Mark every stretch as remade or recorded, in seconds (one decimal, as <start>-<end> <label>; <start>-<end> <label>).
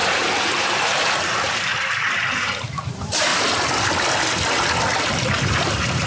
0.0-1.7 remade; 1.7-2.3 recorded; 2.3-3.3 remade; 3.3-5.1 recorded; 5.1-6.1 remade